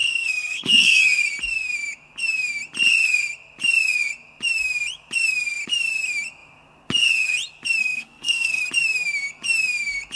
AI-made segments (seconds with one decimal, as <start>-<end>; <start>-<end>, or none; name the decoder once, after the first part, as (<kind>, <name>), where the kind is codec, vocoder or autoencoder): 0.0-1.0 (codec, SNAC); 7.8-8.6